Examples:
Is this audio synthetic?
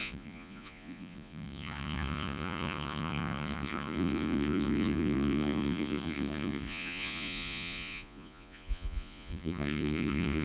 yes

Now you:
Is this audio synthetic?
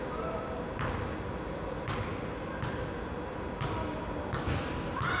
no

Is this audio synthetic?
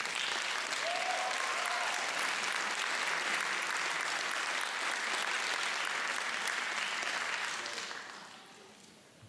no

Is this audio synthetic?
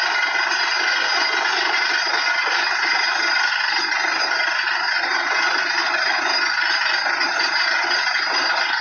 no